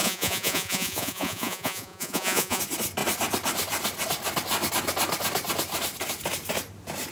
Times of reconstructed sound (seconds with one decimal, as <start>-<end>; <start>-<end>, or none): 0.0-2.6